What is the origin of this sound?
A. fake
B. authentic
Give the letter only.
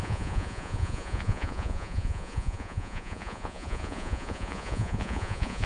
A